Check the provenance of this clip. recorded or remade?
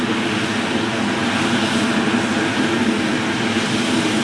recorded